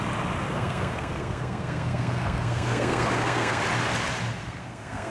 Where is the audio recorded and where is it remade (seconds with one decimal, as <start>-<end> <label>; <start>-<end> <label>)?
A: 0.0-0.5 recorded; 0.5-3.6 remade; 3.6-4.4 recorded; 4.4-5.1 remade